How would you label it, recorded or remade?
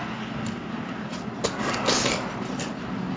recorded